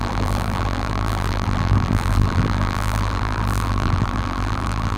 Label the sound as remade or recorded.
remade